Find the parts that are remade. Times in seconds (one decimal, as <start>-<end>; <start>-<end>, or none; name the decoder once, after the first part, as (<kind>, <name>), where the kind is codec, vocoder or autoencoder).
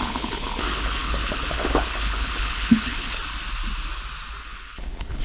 0.0-3.2 (codec, HILCodec); 4.4-5.2